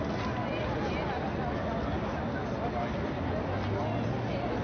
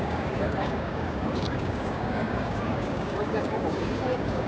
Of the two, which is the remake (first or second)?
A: second